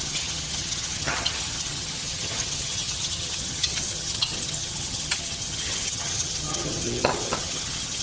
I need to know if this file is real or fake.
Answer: fake